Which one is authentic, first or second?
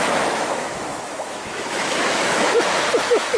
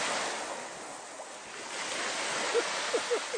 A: second